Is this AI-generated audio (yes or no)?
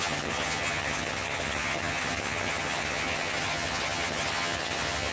yes